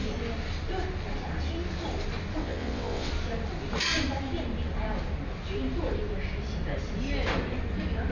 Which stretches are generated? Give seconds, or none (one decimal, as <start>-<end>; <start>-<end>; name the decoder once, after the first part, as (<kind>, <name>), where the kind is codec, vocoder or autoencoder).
2.4-3.1 (vocoder, WaveNeXt)